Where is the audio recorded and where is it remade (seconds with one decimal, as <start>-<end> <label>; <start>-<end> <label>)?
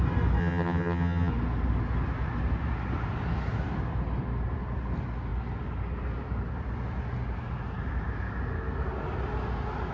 0.0-0.4 recorded; 0.4-1.3 remade; 1.3-9.9 recorded